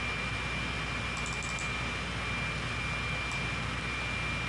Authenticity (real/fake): real